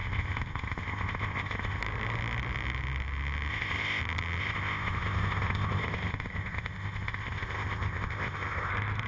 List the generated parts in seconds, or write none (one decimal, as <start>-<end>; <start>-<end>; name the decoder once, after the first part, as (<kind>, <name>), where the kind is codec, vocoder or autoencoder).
0.0-1.8 (codec, ZipCodec); 3.5-4.0; 4.4-8.7

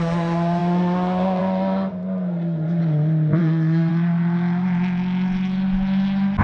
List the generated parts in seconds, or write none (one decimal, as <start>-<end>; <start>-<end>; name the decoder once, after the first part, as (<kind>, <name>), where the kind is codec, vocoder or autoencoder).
0.0-2.8 (codec, SNAC); 3.4-3.9

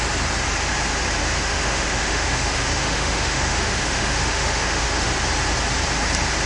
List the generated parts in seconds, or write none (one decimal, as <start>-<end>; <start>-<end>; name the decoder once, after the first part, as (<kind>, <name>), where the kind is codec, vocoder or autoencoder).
1.2-5.1 (autoencoder, DAC-VAE)

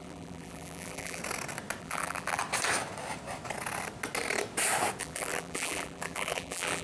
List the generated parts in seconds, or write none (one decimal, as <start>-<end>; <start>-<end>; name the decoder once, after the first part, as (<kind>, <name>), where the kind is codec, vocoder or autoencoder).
0.0-1.2 (vocoder, BigVGAN v2); 1.8-2.4; 5.0-6.8

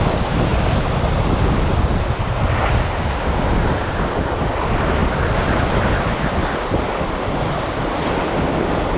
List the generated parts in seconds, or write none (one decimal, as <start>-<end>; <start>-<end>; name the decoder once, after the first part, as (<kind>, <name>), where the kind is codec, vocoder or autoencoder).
none

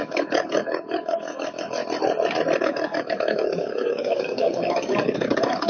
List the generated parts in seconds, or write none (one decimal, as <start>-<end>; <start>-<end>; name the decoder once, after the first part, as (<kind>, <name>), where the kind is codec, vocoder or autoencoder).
0.0-1.8 (codec, DAC); 2.6-5.7

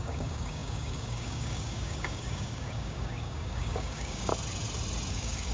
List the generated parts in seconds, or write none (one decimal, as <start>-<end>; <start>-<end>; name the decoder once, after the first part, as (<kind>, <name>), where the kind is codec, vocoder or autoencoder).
0.0-4.3 (codec, DAC); 5.1-5.5

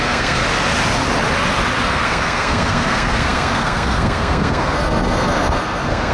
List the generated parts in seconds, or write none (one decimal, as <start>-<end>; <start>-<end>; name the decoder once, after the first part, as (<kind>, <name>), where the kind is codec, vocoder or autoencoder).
0.0-0.4 (codec, SNAC); 1.9-6.1